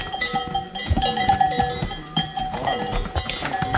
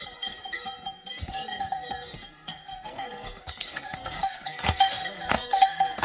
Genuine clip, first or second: first